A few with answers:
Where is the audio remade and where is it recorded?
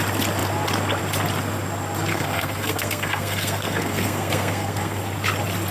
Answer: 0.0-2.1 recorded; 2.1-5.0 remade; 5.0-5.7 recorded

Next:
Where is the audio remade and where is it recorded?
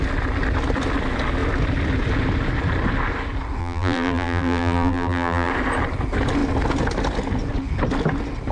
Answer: 0.0-3.6 recorded; 3.6-5.5 remade; 5.5-8.5 recorded